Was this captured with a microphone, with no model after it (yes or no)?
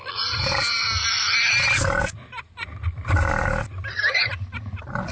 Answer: no